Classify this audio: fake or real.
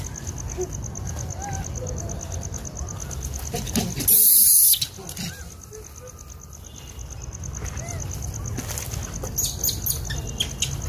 real